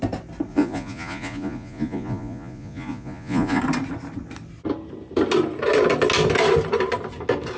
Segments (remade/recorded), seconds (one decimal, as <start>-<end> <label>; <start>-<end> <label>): 0.0-0.5 recorded; 0.5-3.6 remade; 3.6-7.6 recorded